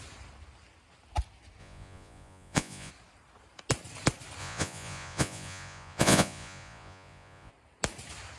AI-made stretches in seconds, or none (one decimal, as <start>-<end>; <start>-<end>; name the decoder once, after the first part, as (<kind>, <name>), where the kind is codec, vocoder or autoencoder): 1.6-2.9 (vocoder, Vocos); 4.4-7.5